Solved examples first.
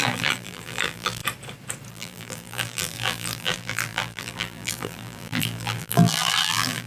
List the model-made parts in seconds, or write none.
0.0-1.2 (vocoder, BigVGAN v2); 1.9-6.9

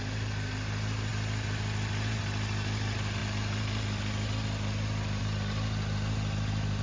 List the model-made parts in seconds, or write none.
none

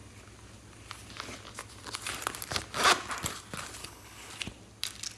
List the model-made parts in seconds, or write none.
3.8-4.3 (codec, HILCodec)